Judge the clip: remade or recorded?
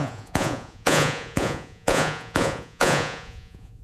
remade